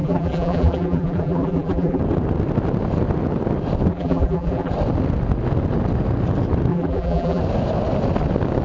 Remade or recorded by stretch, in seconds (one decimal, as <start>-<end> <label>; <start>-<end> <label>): 0.0-2.0 remade; 2.0-3.9 recorded; 3.9-4.7 remade; 4.7-6.7 recorded; 6.7-7.4 remade; 7.4-8.6 recorded